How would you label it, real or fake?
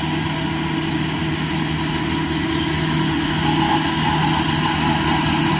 real